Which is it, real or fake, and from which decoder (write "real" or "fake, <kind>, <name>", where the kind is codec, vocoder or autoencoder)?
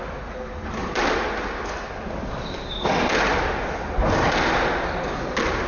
real